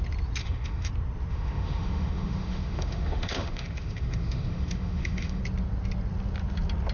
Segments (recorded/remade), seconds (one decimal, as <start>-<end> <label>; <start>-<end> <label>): 0.0-0.4 recorded; 0.4-0.9 remade; 0.9-1.3 recorded; 1.3-5.4 remade; 5.4-6.9 recorded